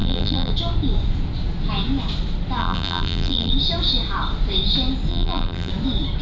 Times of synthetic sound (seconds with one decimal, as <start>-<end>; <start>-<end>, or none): 0.0-0.5; 2.6-3.5; 5.1-5.7